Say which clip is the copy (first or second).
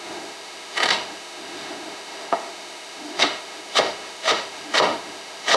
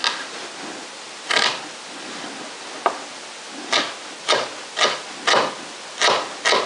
first